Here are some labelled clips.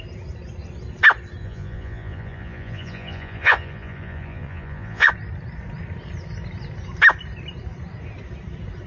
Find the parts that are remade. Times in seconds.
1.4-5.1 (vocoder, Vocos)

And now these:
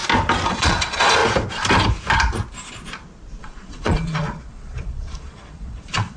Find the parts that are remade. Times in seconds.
0.5-1.2 (vocoder, Vocos); 3.4-6.2

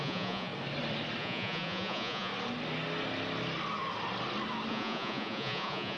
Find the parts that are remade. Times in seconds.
0.0-0.5 (vocoder, Vocos); 1.2-2.3; 4.7-6.0

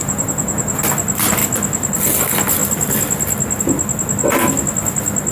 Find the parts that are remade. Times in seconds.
0.0-0.8 (vocoder, Vocos)